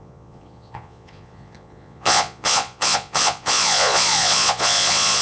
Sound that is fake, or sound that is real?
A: fake